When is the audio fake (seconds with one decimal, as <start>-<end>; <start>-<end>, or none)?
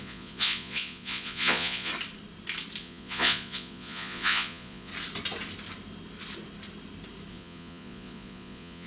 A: 0.0-1.9; 2.8-4.9; 7.3-8.9